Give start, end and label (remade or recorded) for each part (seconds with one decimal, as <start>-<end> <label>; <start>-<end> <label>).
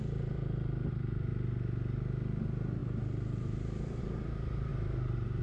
0.0-1.3 remade; 1.3-2.4 recorded; 2.4-4.7 remade; 4.7-5.4 recorded